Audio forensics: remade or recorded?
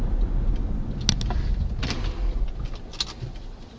recorded